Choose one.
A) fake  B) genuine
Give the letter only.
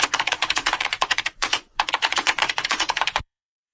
A